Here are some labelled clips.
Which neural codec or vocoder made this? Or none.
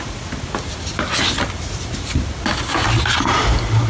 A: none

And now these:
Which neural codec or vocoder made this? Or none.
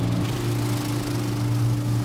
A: none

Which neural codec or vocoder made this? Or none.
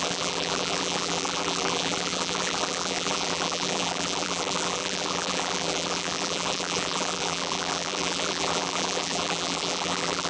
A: vocoder, BigVGAN v2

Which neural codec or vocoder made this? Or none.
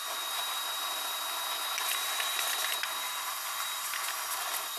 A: none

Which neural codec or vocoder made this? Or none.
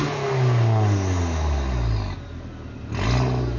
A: none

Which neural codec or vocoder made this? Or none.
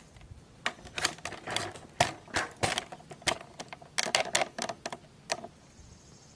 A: none